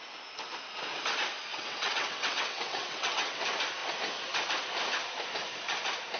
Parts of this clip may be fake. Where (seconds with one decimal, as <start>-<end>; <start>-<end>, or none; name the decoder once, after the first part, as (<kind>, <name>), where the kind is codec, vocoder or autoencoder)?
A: 1.5-3.4 (vocoder, WaveNeXt)